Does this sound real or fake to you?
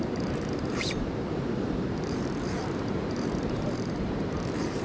fake